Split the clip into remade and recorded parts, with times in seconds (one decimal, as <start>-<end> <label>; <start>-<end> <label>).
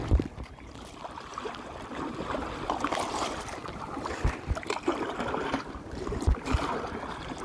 0.0-1.3 recorded; 1.3-2.3 remade; 2.3-7.4 recorded